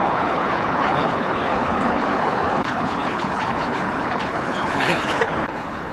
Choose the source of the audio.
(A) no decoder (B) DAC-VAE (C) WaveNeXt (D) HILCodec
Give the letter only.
D